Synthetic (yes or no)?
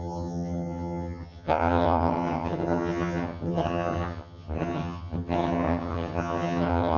yes